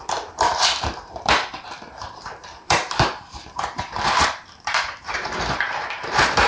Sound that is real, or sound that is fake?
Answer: fake